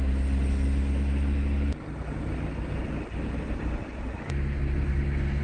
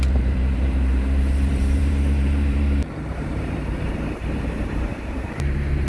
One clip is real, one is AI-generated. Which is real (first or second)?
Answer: first